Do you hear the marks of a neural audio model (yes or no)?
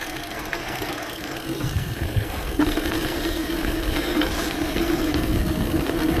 yes